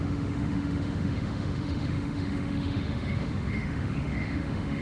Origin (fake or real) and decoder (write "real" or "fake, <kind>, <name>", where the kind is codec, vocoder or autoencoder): fake, autoencoder, DAC-VAE